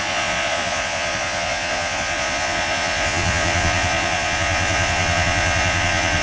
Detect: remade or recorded remade